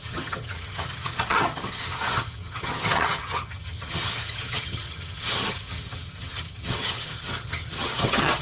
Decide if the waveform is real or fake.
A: fake